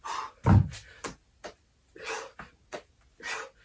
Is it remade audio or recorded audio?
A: recorded